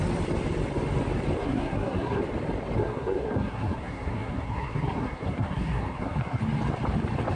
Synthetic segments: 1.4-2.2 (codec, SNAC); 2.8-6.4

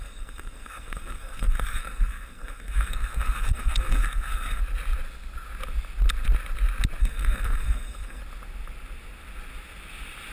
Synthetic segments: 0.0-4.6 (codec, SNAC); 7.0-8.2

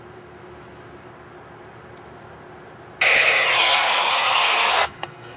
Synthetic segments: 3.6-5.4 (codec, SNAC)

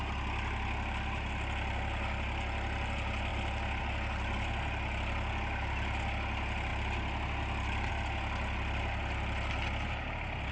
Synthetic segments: none

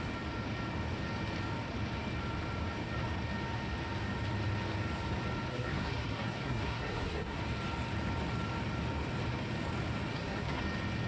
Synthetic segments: 5.5-7.4 (codec, SNAC); 10.1-10.6